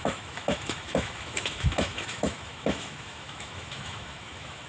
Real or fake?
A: fake